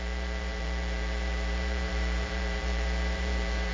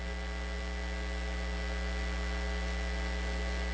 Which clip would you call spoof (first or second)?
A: first